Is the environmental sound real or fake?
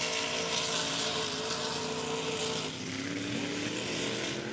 real